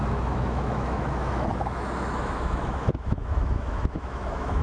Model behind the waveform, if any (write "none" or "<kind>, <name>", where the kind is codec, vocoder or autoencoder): autoencoder, DAC-VAE